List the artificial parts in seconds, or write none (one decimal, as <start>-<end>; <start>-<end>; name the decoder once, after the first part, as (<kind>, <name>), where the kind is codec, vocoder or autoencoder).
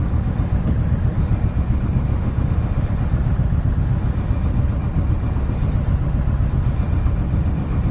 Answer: 2.1-2.9 (autoencoder, DAC-VAE)